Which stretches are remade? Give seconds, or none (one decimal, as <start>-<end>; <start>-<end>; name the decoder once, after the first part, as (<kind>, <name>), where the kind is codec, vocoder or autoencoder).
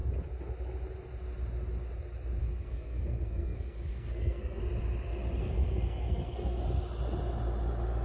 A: 2.4-4.6 (codec, SNAC); 5.4-6.6